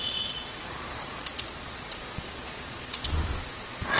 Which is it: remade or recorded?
remade